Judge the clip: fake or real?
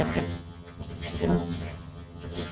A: fake